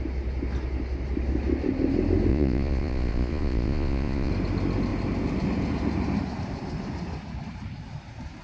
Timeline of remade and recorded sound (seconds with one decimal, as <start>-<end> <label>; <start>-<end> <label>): 0.0-2.3 recorded; 2.3-4.3 remade; 4.3-8.4 recorded